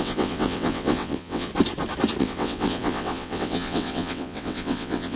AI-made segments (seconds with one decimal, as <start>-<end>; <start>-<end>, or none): 0.0-1.5; 2.2-5.2